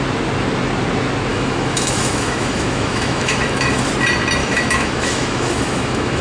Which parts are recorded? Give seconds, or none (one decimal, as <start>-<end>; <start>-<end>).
0.0-1.3; 3.9-4.4